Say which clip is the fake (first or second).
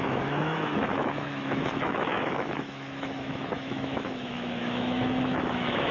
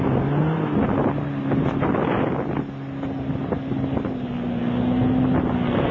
first